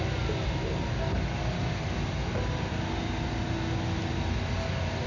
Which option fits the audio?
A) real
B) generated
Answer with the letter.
A